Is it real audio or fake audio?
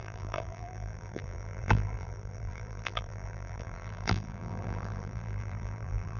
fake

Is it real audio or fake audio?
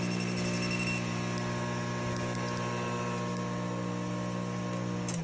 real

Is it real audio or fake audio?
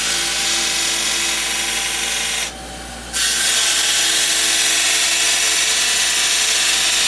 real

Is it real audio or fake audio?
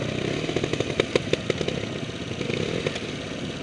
real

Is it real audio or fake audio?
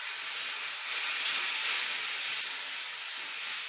real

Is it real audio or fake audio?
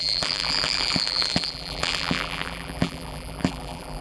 fake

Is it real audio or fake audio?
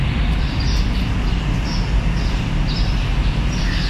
real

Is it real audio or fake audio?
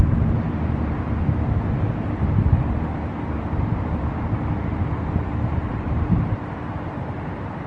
fake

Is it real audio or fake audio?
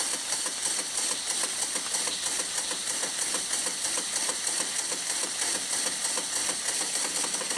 real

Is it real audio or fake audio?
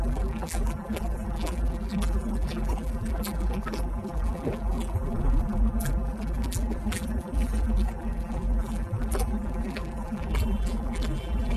fake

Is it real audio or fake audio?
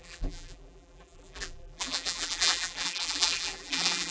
fake